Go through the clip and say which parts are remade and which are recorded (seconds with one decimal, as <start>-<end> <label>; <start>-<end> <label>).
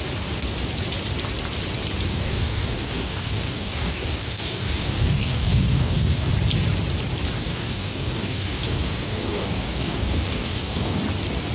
0.0-2.1 recorded; 2.1-6.3 remade; 6.3-7.4 recorded; 7.4-11.0 remade; 11.0-11.5 recorded